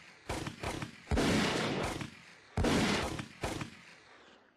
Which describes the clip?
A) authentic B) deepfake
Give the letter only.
A